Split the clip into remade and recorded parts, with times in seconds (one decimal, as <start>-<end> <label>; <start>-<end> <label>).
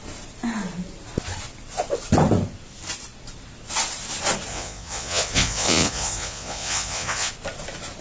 0.0-4.5 recorded; 4.5-7.3 remade; 7.3-8.0 recorded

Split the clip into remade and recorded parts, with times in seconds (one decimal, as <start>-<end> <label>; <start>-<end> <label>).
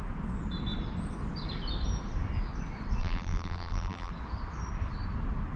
0.0-3.0 recorded; 3.0-4.1 remade; 4.1-5.6 recorded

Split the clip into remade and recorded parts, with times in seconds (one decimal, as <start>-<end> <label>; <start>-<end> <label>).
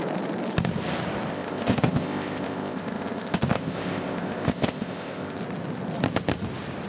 0.0-1.3 recorded; 1.3-5.4 remade; 5.4-6.9 recorded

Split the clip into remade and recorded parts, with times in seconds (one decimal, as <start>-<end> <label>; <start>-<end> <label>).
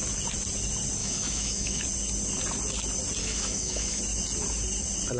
0.0-1.0 recorded; 1.0-1.8 remade; 1.8-3.2 recorded; 3.2-4.0 remade; 4.0-5.2 recorded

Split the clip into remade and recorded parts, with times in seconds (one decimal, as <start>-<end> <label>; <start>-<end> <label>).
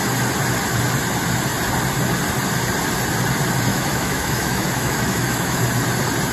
0.0-3.7 recorded; 3.7-5.6 remade; 5.6-6.3 recorded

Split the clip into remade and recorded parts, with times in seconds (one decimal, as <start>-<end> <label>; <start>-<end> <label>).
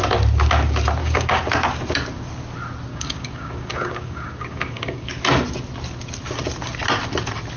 0.0-1.0 recorded; 1.0-1.5 remade; 1.5-2.9 recorded; 2.9-5.1 remade; 5.1-7.6 recorded